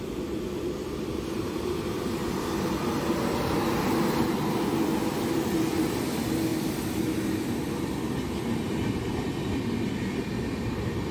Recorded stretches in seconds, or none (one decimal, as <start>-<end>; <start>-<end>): 6.5-10.0